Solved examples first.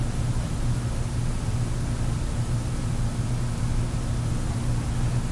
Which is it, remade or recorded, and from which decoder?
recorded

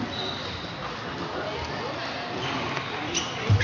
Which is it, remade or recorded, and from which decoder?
recorded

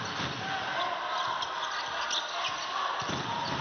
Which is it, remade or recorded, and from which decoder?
recorded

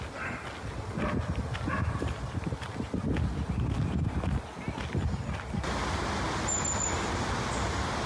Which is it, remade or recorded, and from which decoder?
recorded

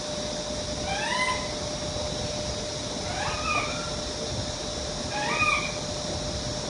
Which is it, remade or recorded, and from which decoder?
recorded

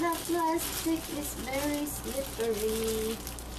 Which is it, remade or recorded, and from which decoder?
recorded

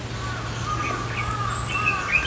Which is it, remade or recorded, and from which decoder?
recorded